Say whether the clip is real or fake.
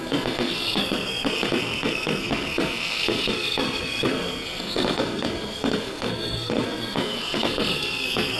fake